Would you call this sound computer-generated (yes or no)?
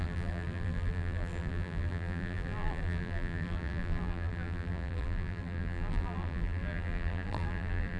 yes